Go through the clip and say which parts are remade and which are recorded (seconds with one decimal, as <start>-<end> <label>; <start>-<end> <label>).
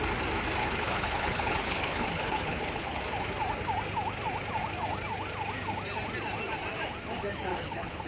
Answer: 0.0-0.6 recorded; 0.6-3.0 remade; 3.0-7.5 recorded; 7.5-8.1 remade